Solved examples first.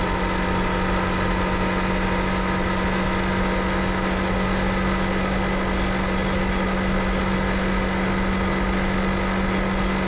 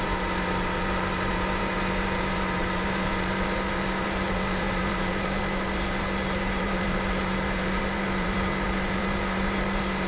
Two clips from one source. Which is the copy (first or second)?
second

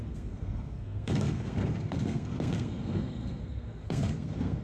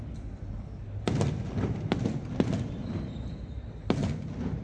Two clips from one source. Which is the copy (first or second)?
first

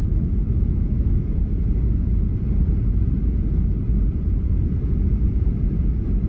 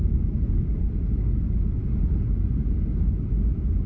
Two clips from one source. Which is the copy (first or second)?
first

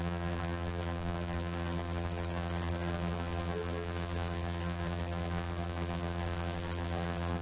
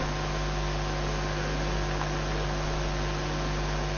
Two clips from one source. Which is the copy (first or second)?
first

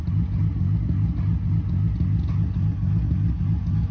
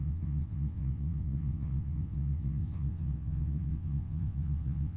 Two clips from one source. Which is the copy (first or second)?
second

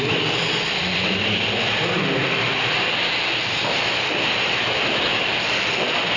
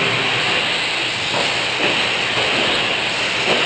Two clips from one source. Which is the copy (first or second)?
first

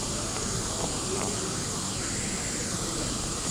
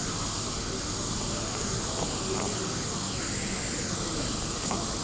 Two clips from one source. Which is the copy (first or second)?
first